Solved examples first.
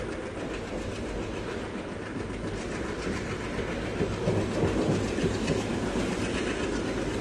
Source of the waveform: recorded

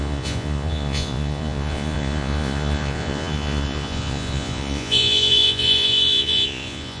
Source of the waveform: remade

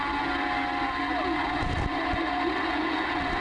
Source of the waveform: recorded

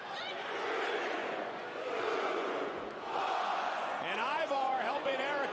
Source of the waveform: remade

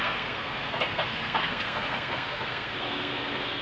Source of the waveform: remade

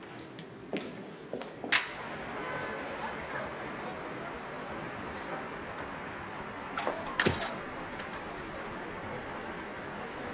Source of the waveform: recorded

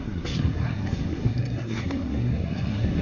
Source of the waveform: remade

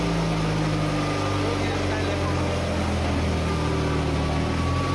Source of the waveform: recorded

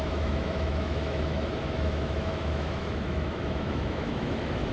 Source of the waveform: remade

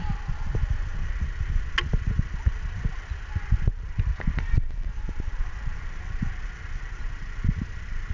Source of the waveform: recorded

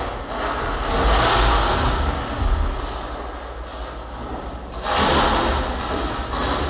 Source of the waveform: recorded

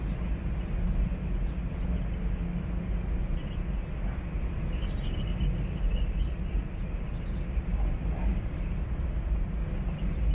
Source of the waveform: recorded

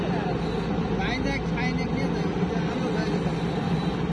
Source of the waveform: recorded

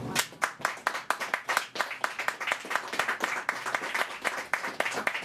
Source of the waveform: recorded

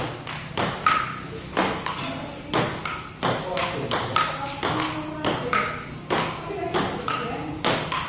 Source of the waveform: recorded